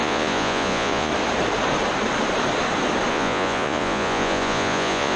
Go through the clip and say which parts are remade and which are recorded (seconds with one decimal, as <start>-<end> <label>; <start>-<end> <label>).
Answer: 0.0-1.1 remade; 1.1-3.1 recorded; 3.1-5.2 remade